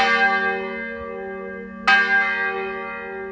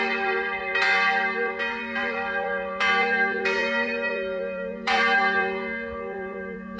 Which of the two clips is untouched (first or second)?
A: first